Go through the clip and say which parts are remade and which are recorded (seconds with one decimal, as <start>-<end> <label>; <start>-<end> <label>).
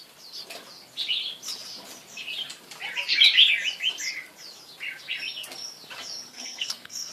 0.0-6.3 recorded; 6.3-7.1 remade